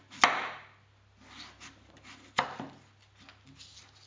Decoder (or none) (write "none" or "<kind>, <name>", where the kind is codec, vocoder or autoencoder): none